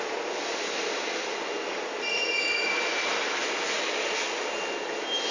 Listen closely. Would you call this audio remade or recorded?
recorded